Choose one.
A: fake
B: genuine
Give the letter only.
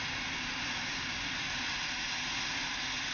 B